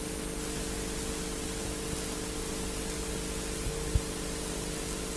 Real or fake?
real